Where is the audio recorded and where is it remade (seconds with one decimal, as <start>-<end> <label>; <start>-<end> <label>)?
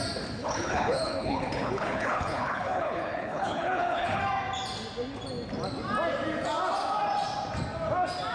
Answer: 0.0-0.4 recorded; 0.4-4.2 remade; 4.2-8.3 recorded